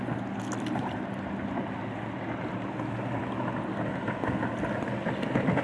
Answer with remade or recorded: recorded